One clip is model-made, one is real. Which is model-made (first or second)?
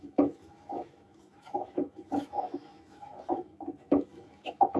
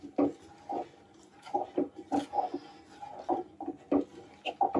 first